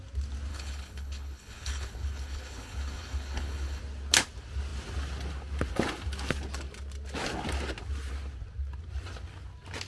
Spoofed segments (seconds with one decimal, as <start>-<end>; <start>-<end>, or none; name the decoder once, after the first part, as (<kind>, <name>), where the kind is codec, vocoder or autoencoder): 0.5-3.8 (codec, HILCodec)